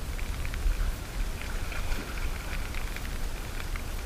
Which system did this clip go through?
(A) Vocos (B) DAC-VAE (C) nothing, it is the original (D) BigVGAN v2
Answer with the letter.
C